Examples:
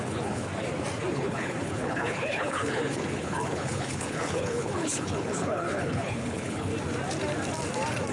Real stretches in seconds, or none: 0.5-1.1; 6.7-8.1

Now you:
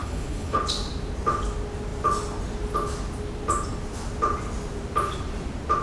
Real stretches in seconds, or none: 0.6-5.8

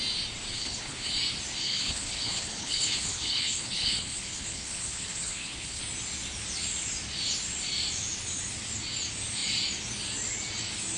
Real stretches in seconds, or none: 0.0-0.5; 1.1-1.6; 5.8-11.0

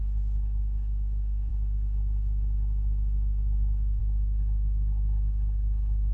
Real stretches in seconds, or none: none

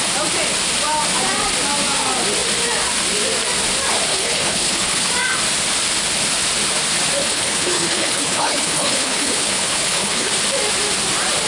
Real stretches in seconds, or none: 0.0-4.1; 5.1-7.2; 10.4-11.5

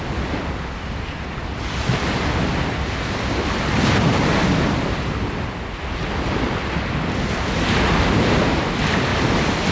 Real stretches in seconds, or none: 0.0-9.7